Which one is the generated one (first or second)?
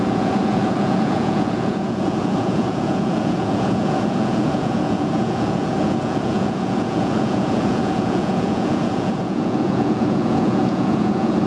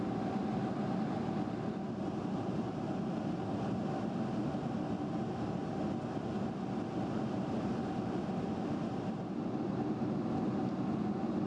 first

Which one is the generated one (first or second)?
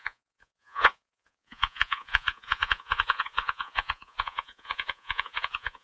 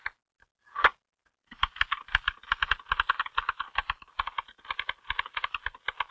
first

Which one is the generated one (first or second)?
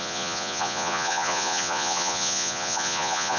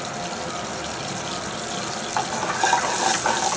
first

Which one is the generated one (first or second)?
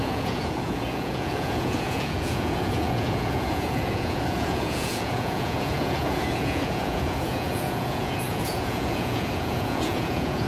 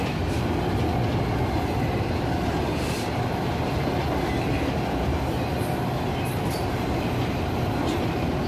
first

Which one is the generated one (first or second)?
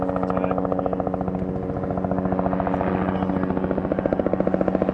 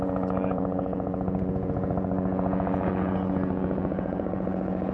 second